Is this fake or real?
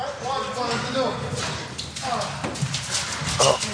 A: real